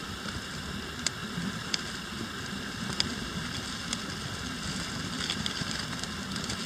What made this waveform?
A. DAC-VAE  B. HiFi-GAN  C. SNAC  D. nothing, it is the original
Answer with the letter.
D